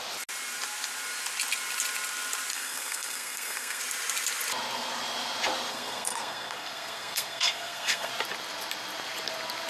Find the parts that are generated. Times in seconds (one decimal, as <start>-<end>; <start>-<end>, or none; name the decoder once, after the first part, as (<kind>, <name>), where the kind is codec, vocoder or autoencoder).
2.5-3.8 (codec, SNAC); 5.7-8.1